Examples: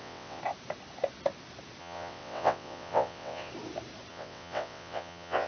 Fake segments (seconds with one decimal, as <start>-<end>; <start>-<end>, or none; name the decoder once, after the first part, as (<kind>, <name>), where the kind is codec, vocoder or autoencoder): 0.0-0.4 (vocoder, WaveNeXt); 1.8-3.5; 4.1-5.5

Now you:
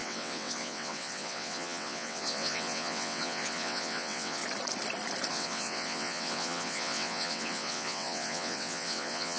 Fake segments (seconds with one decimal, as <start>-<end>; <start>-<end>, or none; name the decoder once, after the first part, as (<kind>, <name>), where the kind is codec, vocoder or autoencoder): 0.0-4.4 (vocoder, WaveNeXt); 5.3-9.4

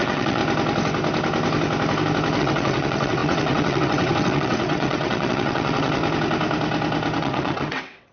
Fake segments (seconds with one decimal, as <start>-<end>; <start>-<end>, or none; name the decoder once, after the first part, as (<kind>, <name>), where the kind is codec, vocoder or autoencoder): 0.0-0.4 (vocoder, WaveNeXt); 2.4-6.0; 7.2-8.1

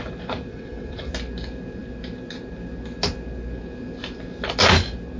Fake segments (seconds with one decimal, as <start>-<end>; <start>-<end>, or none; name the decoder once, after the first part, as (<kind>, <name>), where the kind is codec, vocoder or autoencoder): 0.5-1.1 (vocoder, WaveNeXt)

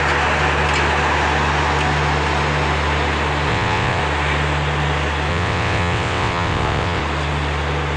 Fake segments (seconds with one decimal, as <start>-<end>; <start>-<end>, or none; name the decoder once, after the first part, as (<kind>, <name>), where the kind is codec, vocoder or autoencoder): 3.5-4.0 (vocoder, WaveNeXt); 5.3-7.0

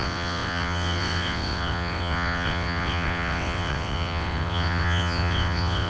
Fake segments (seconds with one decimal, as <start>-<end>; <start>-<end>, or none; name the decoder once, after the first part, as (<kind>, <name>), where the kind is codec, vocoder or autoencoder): 0.0-5.9 (vocoder, WaveNeXt)

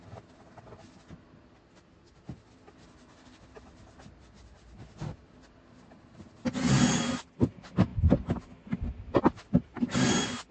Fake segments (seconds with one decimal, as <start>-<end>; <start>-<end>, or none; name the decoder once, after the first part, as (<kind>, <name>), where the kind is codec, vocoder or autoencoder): none